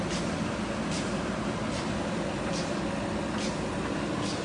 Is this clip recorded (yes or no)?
yes